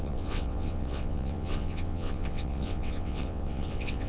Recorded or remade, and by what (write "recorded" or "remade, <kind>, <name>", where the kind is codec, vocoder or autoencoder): remade, vocoder, WaveNeXt